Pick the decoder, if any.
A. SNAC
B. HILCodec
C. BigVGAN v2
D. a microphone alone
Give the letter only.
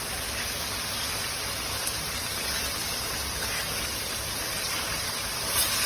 C